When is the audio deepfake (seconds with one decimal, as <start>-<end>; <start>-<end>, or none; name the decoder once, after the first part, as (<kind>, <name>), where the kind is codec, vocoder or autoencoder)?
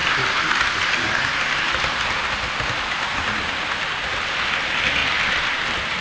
none